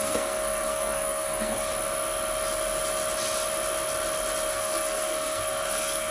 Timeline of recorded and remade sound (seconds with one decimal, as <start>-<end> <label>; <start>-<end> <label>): 0.0-1.7 remade; 1.7-4.5 recorded; 4.5-6.1 remade